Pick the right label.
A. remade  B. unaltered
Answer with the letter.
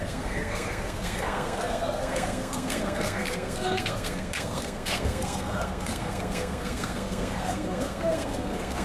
A